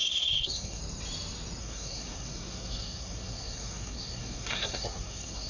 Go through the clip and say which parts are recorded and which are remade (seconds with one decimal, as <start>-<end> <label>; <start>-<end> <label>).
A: 0.0-0.8 remade; 0.8-1.6 recorded; 1.6-5.5 remade